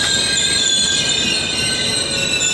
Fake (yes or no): yes